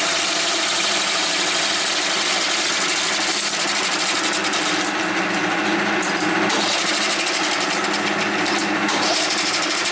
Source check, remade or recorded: recorded